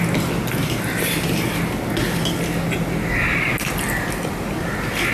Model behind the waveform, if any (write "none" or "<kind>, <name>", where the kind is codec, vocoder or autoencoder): none